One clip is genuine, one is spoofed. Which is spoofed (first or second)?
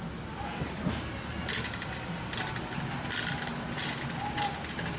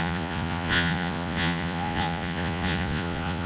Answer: second